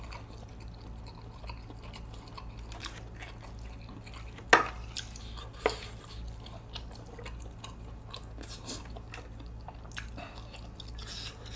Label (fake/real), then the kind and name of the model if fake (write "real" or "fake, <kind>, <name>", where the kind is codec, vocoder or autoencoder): real